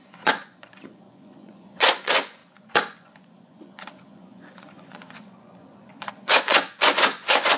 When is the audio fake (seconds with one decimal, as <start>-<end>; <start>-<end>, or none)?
0.0-7.6